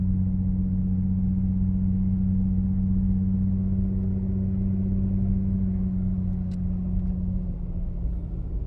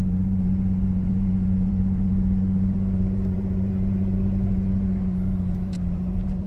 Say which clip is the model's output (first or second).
second